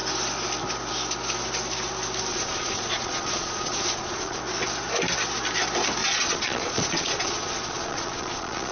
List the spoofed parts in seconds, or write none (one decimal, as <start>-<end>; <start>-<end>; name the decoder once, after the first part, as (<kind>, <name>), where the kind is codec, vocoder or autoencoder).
2.3-4.4 (vocoder, Vocos); 6.0-8.7